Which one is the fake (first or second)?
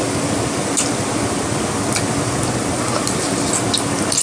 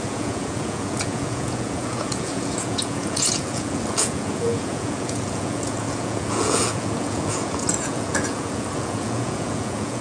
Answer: second